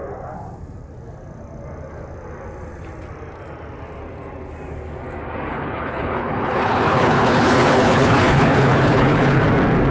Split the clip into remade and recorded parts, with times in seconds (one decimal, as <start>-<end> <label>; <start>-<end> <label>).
0.0-5.5 recorded; 5.5-9.4 remade; 9.4-9.9 recorded

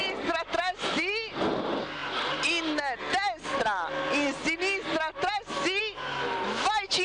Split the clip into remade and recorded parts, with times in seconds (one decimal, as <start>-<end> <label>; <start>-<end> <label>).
0.0-7.0 recorded

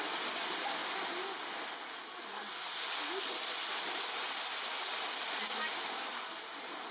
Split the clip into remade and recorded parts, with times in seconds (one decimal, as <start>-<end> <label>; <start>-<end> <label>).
0.0-6.9 recorded

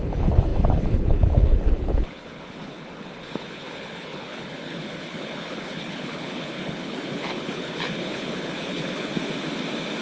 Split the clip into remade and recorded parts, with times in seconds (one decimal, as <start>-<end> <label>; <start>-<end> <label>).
0.0-9.1 remade; 9.1-10.0 recorded

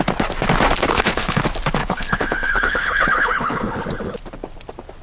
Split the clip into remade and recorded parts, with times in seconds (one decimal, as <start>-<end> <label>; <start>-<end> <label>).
0.0-0.9 recorded; 0.9-1.4 remade; 1.4-1.8 recorded; 1.8-3.8 remade; 3.8-5.0 recorded